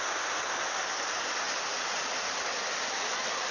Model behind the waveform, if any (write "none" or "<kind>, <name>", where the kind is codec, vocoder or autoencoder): none